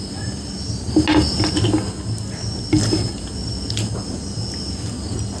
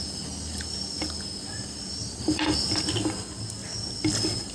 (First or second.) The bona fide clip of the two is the first